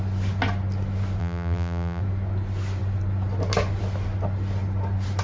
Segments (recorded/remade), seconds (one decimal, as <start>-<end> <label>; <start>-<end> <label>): 0.0-1.2 recorded; 1.2-2.0 remade; 2.0-5.2 recorded